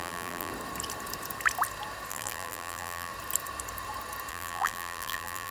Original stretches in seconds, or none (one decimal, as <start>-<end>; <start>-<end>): 0.5-2.1; 3.1-4.3